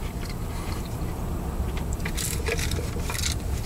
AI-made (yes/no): yes